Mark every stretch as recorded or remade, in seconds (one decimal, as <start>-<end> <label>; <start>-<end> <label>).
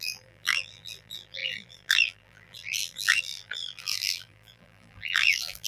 0.0-5.7 remade